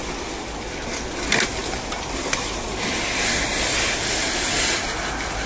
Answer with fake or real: real